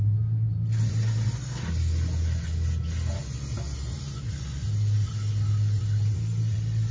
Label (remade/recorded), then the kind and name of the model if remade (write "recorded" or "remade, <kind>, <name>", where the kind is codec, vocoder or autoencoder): recorded